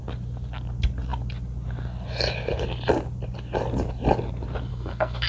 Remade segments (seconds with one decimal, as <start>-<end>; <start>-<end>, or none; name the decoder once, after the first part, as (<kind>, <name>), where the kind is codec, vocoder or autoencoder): 4.7-5.3 (codec, SNAC)